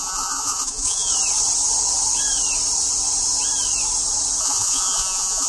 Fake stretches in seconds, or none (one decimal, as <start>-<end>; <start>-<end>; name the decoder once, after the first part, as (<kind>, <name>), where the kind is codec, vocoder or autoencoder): 0.0-1.1 (vocoder, Vocos); 4.4-5.5